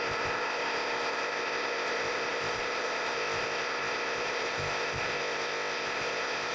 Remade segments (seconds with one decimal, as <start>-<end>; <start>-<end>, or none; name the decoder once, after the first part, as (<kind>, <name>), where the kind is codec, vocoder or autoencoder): 0.0-6.5 (codec, ZipCodec)